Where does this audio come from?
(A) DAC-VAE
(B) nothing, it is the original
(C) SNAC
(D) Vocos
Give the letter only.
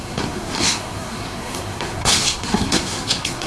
C